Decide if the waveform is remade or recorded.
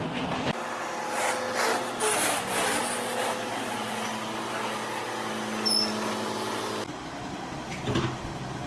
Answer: recorded